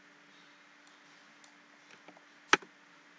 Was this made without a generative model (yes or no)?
yes